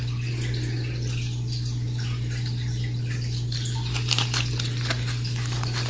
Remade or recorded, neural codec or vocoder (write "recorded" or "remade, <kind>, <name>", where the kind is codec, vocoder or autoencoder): recorded